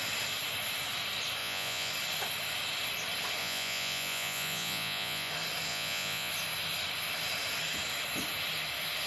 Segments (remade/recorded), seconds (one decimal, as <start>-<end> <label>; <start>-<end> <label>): 0.0-1.4 recorded; 1.4-1.9 remade; 1.9-3.4 recorded; 3.4-5.3 remade; 5.3-5.7 recorded; 5.7-6.3 remade; 6.3-9.1 recorded

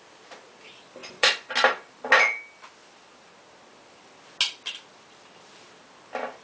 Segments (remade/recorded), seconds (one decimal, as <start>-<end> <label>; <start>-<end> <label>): 0.0-1.0 recorded; 1.0-1.5 remade; 1.5-6.4 recorded